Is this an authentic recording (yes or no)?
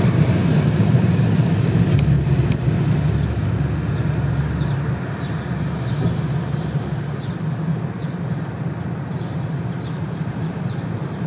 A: yes